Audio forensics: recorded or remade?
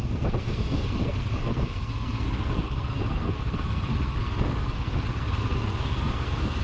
remade